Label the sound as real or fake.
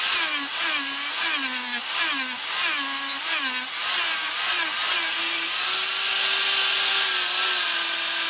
real